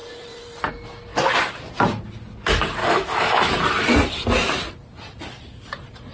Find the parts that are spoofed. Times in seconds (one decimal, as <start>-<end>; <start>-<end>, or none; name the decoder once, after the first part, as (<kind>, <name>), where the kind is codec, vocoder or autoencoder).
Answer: 2.8-3.5 (autoencoder, DAC-VAE)